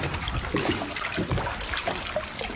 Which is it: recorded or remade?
recorded